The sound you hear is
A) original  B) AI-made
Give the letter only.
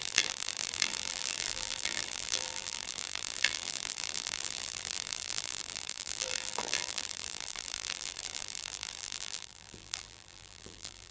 B